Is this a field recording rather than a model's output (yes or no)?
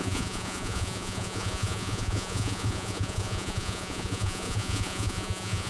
no